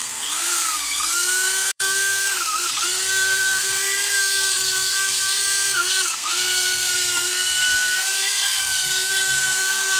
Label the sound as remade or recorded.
remade